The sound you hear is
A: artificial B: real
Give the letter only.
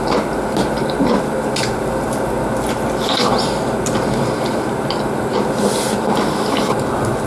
B